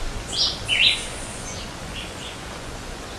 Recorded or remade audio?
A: remade